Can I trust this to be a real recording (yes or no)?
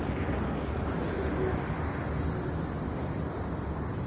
yes